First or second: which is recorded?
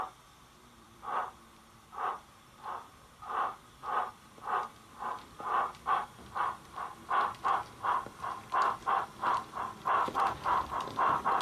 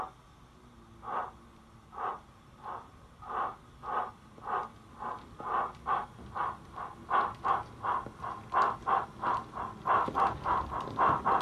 second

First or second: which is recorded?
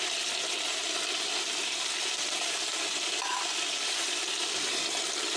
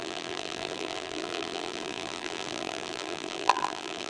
first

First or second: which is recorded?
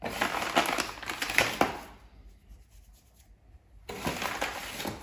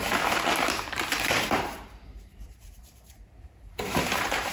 first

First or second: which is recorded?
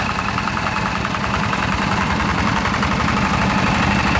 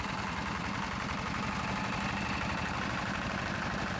second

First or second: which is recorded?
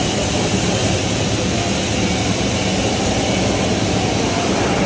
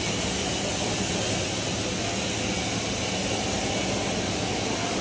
second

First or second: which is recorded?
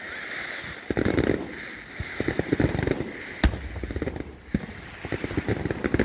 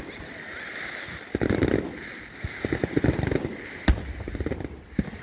first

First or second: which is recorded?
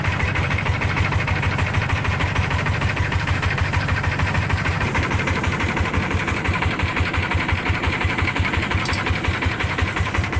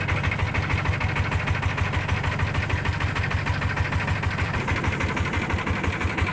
second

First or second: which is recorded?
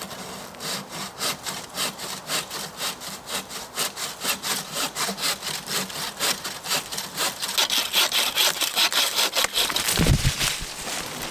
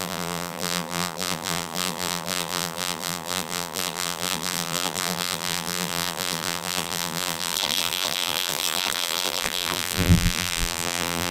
first